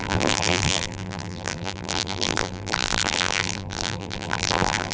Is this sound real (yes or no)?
no